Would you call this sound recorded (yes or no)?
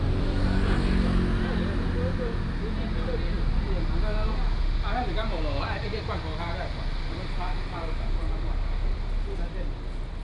yes